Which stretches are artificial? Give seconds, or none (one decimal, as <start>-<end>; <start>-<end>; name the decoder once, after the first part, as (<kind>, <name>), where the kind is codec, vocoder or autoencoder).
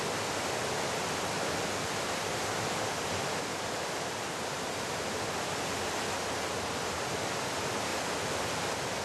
none